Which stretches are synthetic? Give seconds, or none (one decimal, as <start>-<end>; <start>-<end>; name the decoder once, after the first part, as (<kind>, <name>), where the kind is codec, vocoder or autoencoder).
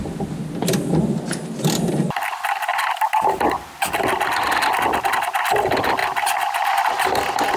none